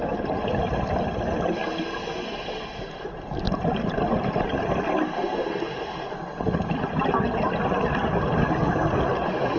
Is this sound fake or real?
real